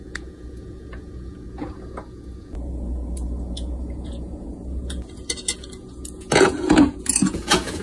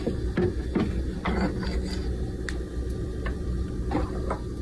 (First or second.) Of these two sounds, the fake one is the first